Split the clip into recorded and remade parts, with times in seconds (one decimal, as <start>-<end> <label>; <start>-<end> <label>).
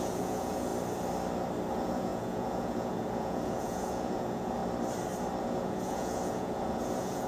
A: 0.0-0.7 remade; 0.7-1.7 recorded; 1.7-4.6 remade; 4.6-5.4 recorded; 5.4-7.3 remade